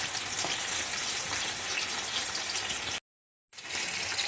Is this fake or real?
real